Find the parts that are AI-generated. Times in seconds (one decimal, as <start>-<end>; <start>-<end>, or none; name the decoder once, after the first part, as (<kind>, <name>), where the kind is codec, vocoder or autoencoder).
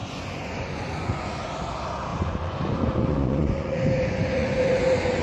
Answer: 0.0-1.5 (vocoder, Vocos); 2.1-5.2